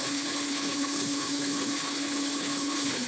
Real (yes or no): no